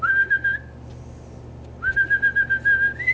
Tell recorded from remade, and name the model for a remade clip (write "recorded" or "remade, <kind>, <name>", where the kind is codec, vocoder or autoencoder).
recorded